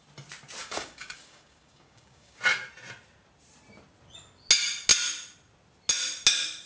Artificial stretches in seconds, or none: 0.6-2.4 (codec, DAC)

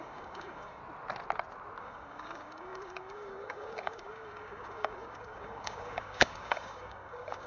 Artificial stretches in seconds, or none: 0.0-0.8 (codec, DAC); 1.8-7.5

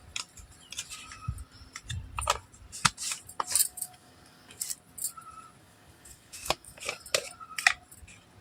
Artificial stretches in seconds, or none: 3.7-4.6 (codec, DAC); 5.6-6.8

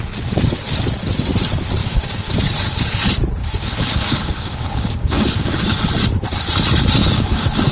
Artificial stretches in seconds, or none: 1.8-2.3 (codec, DAC); 3.4-5.8; 7.0-7.7

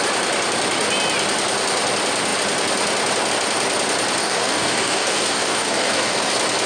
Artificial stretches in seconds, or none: 4.2-6.3 (codec, DAC)

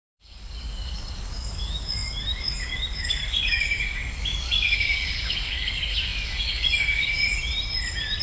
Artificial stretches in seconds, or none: 0.0-7.2 (codec, DAC)